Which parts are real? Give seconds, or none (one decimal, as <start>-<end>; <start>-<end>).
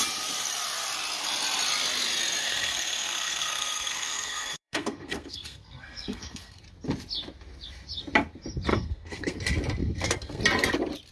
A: 0.0-2.4; 6.6-8.7; 9.4-9.8; 10.4-11.1